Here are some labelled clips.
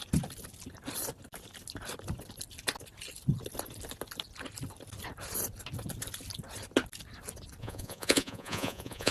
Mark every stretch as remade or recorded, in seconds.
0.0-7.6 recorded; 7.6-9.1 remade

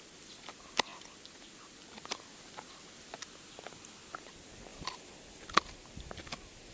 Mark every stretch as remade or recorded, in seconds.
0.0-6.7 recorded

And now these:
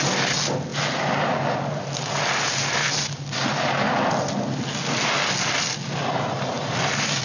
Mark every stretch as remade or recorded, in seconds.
0.0-7.2 recorded

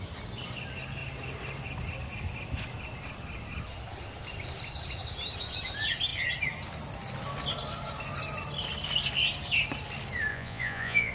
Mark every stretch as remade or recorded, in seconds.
0.0-10.3 recorded; 10.3-11.1 remade

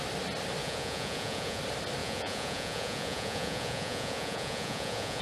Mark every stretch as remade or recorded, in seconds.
0.0-0.6 recorded; 0.6-1.6 remade; 1.6-2.0 recorded; 2.0-5.2 remade

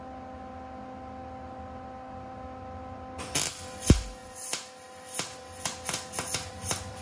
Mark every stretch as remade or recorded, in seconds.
0.0-7.0 recorded

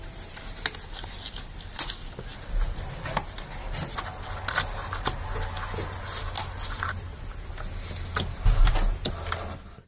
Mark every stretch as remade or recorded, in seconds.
0.0-9.9 recorded

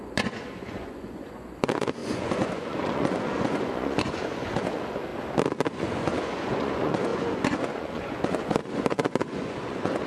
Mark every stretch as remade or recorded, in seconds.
0.0-5.1 remade; 5.1-5.7 recorded; 5.7-10.1 remade